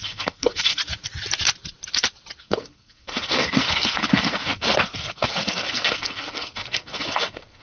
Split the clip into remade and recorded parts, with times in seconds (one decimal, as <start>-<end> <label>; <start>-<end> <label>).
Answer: 0.0-0.8 remade; 0.8-2.4 recorded; 2.4-7.6 remade